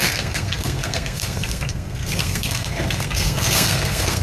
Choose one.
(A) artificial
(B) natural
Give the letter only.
A